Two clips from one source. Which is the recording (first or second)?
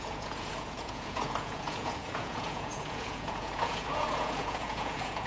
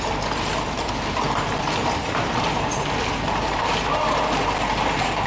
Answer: second